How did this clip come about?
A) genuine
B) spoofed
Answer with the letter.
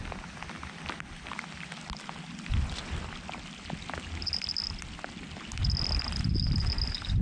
A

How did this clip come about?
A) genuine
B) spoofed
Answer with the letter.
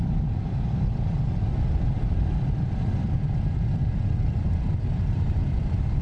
B